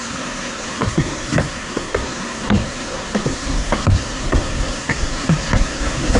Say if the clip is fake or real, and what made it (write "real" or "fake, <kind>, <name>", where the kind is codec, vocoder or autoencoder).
fake, codec, SNAC